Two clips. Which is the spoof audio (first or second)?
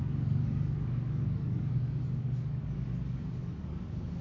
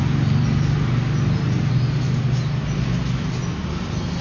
first